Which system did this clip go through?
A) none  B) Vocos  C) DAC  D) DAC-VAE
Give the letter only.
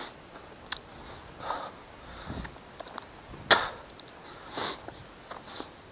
A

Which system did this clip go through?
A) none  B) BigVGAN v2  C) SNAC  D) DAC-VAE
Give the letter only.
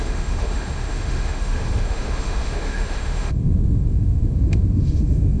D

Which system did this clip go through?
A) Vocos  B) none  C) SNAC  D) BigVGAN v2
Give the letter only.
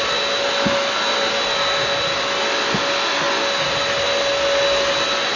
B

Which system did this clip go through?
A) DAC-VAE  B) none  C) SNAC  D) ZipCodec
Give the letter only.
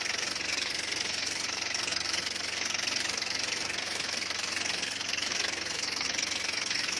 C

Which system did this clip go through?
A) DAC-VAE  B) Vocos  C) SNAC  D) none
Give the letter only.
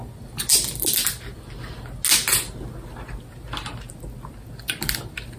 D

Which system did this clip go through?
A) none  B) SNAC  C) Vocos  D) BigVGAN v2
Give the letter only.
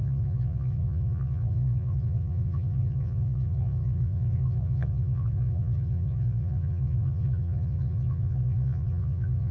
C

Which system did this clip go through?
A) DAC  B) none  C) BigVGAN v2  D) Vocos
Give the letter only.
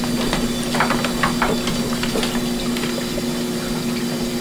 B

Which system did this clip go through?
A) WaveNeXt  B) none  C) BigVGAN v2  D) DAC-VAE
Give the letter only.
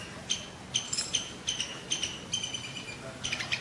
B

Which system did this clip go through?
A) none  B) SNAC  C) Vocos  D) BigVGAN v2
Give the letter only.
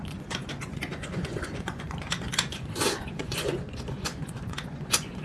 C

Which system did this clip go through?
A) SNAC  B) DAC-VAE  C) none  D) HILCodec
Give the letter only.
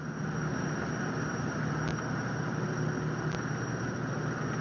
C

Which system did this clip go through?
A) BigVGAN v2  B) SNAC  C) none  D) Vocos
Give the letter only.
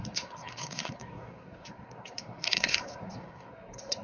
B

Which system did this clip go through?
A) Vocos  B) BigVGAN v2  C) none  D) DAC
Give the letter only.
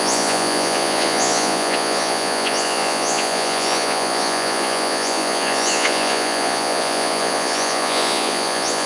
A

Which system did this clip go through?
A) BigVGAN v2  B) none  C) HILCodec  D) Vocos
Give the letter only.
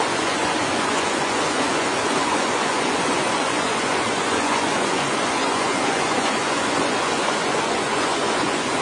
D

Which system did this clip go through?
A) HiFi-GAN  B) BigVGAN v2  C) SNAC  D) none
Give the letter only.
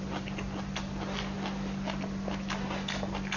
D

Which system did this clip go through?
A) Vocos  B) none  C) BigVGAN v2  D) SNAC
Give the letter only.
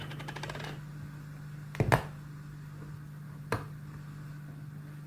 B